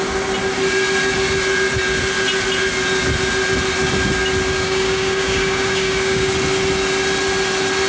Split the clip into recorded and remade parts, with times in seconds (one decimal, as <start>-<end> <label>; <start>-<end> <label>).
0.0-4.5 recorded; 4.5-6.3 remade; 6.3-7.9 recorded